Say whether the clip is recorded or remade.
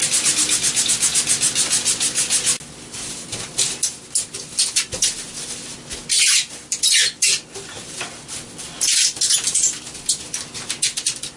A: recorded